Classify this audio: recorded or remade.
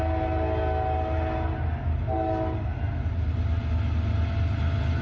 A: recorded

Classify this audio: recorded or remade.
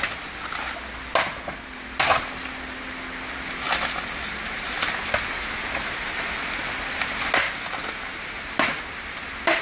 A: recorded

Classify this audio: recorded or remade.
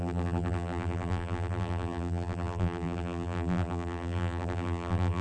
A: remade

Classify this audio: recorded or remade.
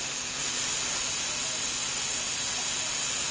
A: recorded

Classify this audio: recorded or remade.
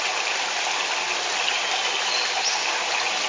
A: recorded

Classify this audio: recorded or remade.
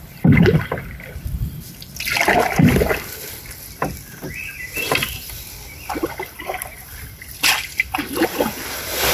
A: remade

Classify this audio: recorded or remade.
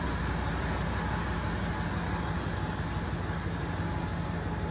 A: recorded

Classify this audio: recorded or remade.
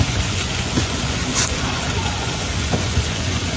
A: remade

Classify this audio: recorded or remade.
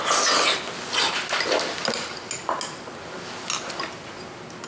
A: recorded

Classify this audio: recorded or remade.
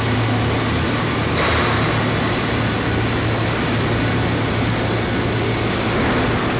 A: recorded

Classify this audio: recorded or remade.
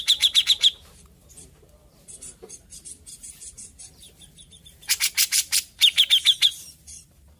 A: remade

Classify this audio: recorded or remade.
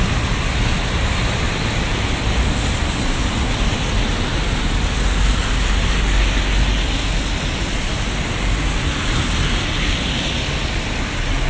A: recorded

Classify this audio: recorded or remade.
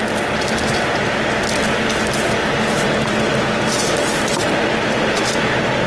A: recorded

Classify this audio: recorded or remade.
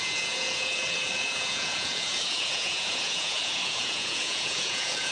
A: remade